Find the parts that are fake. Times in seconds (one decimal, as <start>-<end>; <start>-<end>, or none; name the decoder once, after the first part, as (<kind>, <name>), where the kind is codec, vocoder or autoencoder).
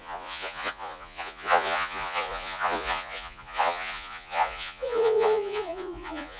0.0-6.4 (vocoder, Vocos)